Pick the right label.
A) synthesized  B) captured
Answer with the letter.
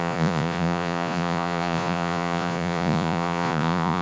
A